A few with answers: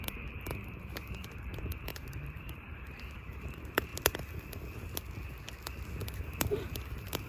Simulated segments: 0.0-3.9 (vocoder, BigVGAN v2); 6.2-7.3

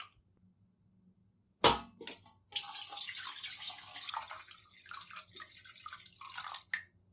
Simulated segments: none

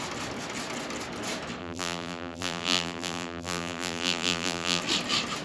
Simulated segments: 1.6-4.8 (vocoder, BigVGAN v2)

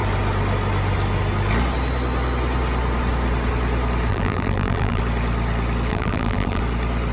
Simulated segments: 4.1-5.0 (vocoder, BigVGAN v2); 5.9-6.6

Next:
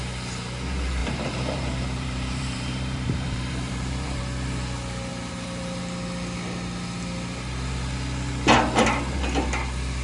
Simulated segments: 1.0-4.2 (vocoder, BigVGAN v2); 5.1-5.8

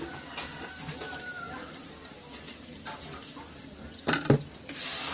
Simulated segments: 0.5-2.1 (vocoder, BigVGAN v2)

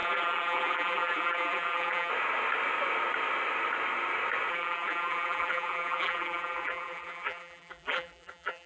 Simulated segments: 0.0-2.1 (vocoder, BigVGAN v2); 4.5-8.7

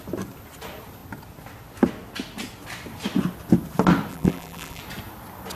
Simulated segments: 4.1-4.8 (vocoder, BigVGAN v2)